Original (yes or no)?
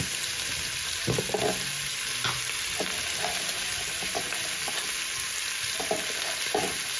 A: yes